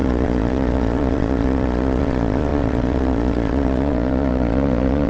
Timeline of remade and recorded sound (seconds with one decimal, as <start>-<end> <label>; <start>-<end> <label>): 0.0-5.1 remade